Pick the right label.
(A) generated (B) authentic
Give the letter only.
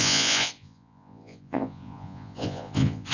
A